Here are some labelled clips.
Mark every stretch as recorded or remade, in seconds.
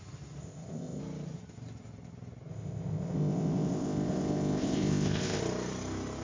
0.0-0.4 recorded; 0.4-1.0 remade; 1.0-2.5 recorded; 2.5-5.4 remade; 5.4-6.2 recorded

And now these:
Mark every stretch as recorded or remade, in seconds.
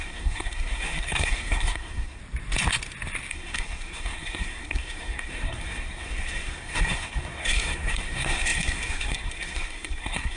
0.0-2.2 remade; 2.2-3.3 recorded; 3.3-10.4 remade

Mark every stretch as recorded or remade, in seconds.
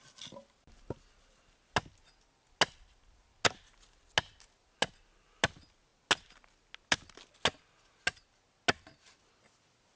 0.0-10.0 recorded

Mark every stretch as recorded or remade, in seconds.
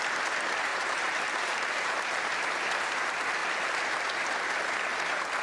0.0-0.7 recorded; 0.7-3.0 remade; 3.0-5.4 recorded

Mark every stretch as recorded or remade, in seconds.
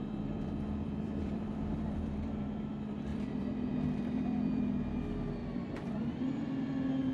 0.0-2.7 remade; 2.7-3.1 recorded; 3.1-4.7 remade; 4.7-5.4 recorded; 5.4-5.9 remade; 5.9-7.1 recorded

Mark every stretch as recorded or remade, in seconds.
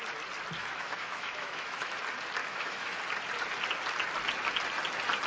0.0-0.6 recorded; 0.6-2.0 remade; 2.0-2.4 recorded; 2.4-3.0 remade; 3.0-5.3 recorded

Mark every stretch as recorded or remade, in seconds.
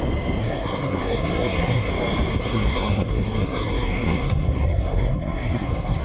0.0-0.4 recorded; 0.4-1.9 remade; 1.9-2.3 recorded; 2.3-6.0 remade